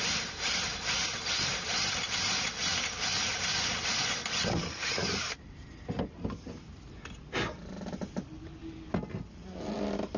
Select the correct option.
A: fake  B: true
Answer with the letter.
B